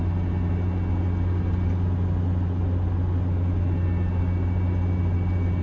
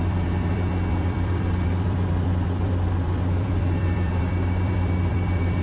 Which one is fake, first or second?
second